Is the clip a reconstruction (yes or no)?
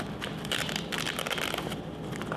no